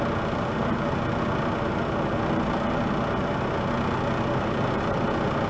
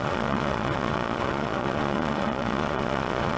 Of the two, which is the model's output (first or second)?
second